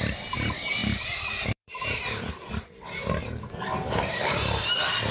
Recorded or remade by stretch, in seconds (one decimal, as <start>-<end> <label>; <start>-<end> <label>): 0.0-0.8 recorded; 0.8-2.5 remade; 2.5-3.8 recorded; 3.8-5.1 remade